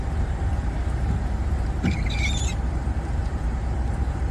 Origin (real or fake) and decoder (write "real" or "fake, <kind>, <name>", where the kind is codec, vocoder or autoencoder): fake, vocoder, BigVGAN v2